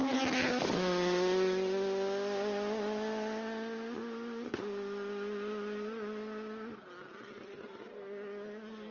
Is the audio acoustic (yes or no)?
yes